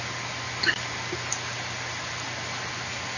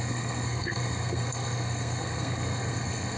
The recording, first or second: first